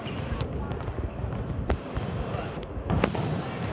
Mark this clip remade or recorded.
recorded